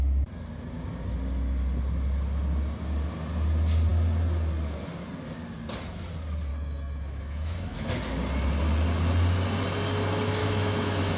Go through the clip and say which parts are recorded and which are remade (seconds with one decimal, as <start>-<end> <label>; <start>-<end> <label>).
0.0-6.5 recorded; 6.5-7.9 remade; 7.9-10.4 recorded; 10.4-11.2 remade